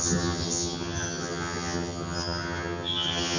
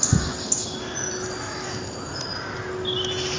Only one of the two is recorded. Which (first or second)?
second